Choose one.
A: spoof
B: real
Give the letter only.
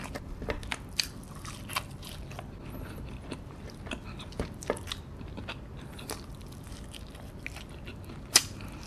B